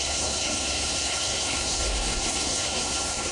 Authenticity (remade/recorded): remade